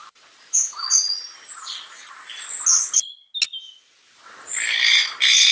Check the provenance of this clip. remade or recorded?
recorded